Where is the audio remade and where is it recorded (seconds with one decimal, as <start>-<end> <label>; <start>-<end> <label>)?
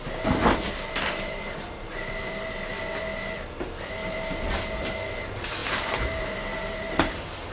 0.0-4.0 recorded; 4.0-4.6 remade; 4.6-5.6 recorded; 5.6-7.1 remade; 7.1-7.5 recorded